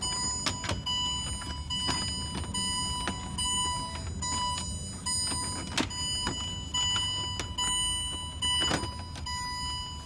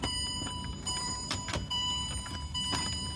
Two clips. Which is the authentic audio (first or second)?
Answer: first